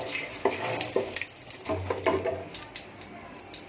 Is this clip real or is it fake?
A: real